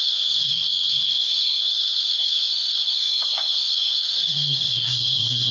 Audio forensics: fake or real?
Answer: fake